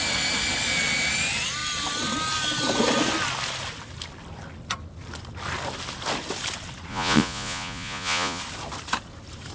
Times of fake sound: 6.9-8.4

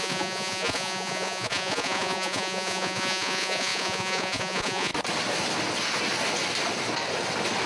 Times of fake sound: 0.0-4.9

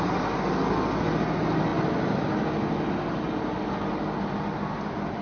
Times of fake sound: none

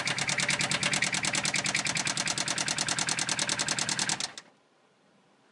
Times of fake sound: none

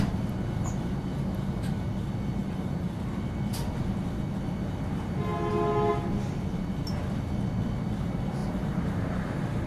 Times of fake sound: 2.4-3.1; 8.4-9.7

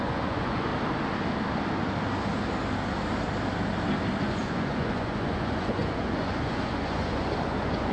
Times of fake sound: 0.0-0.7; 4.2-7.9

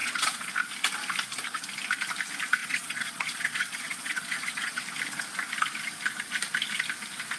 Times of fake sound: 0.0-0.5; 2.6-4.8